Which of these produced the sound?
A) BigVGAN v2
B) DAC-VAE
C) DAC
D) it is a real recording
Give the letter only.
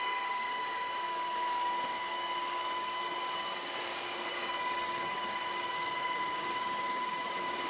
C